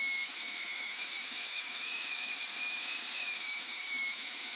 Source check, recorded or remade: remade